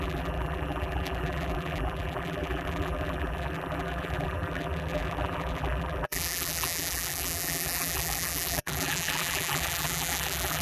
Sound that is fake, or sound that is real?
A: fake